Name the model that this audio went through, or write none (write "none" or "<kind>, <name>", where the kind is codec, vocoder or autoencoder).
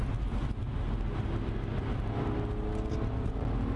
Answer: none